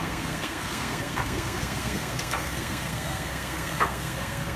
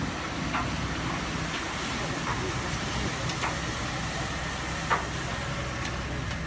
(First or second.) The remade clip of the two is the first